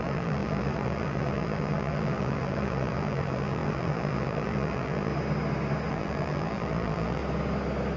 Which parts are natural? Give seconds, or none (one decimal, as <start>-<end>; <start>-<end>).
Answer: 5.1-5.9; 7.2-8.0